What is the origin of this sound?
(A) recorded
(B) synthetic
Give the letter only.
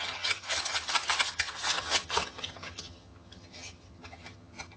B